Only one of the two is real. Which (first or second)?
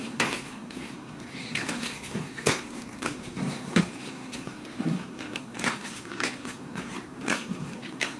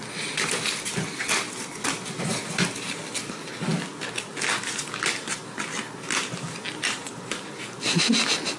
second